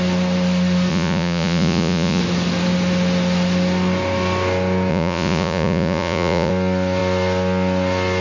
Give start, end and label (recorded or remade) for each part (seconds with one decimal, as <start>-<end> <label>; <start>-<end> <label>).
0.0-0.9 recorded; 0.9-2.2 remade; 2.2-4.9 recorded; 4.9-6.5 remade; 6.5-8.2 recorded